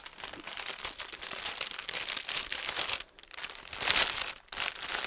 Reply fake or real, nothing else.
real